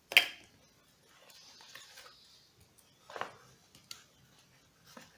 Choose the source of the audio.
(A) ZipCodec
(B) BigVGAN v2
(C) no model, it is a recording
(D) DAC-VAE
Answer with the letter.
C